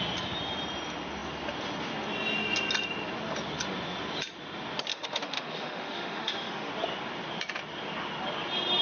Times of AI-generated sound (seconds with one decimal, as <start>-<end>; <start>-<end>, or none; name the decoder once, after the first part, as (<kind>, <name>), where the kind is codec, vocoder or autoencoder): 4.9-6.7 (autoencoder, DAC-VAE)